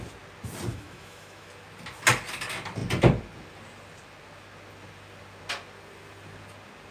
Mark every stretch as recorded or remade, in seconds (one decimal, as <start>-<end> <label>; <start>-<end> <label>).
0.0-0.7 recorded; 0.7-1.5 remade; 1.5-6.9 recorded